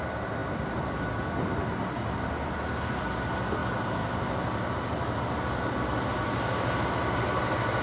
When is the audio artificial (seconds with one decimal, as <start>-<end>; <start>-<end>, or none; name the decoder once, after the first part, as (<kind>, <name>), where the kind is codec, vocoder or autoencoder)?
none